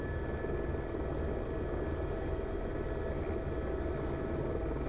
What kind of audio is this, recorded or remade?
recorded